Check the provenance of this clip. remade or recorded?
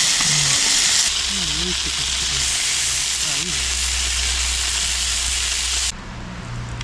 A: recorded